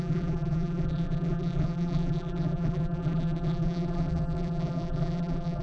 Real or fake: fake